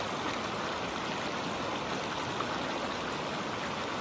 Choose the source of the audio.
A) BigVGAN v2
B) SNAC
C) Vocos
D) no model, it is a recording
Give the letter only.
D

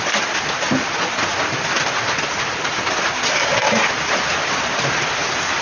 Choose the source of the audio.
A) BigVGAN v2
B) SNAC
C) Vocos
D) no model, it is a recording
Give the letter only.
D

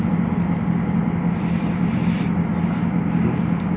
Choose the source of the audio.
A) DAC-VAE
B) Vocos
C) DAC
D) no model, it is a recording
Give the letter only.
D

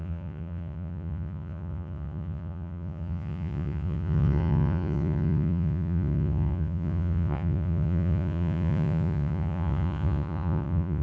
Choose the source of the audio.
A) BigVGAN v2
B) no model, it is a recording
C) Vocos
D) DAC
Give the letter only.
C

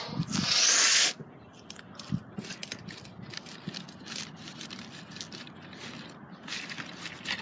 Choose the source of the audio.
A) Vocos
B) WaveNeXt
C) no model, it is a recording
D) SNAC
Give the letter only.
C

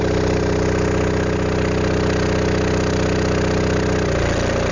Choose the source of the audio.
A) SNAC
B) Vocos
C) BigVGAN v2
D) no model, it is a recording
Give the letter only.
D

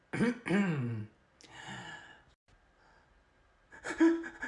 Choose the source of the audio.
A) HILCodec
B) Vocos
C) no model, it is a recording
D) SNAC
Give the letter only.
C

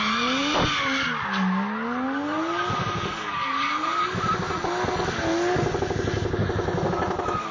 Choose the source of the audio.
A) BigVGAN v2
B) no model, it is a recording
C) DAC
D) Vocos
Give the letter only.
B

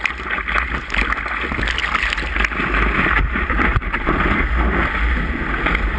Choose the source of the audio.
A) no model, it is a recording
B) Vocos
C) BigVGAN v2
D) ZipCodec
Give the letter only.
A